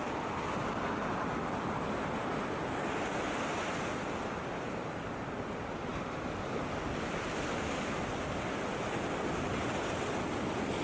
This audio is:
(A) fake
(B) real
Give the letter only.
B